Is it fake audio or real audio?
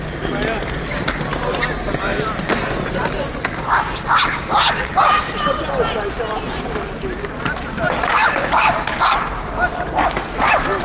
real